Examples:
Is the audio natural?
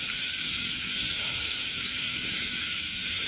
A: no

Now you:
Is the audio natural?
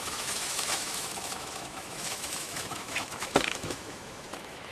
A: no